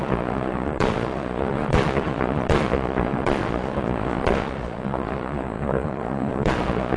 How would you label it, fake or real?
fake